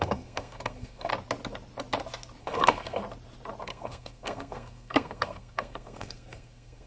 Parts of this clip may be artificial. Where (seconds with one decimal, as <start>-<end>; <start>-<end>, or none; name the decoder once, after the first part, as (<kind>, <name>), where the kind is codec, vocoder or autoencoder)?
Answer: 0.0-1.1 (codec, SNAC); 2.4-3.0; 3.6-6.9